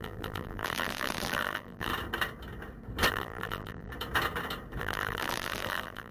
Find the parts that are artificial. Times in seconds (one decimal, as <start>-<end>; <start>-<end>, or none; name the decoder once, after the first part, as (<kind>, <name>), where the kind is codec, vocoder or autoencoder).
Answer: 0.0-1.9 (vocoder, BigVGAN v2); 3.1-3.9; 4.8-6.1